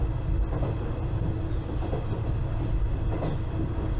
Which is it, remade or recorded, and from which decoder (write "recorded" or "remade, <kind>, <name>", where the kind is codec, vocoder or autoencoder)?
recorded